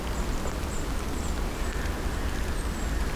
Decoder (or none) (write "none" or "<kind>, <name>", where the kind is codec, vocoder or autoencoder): none